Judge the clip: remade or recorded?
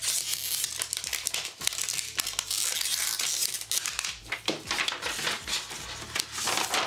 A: recorded